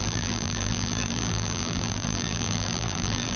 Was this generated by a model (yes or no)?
yes